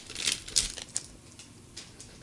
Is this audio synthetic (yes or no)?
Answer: no